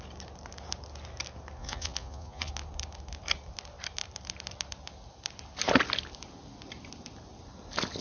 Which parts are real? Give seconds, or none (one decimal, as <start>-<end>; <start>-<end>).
0.0-1.6; 2.5-8.0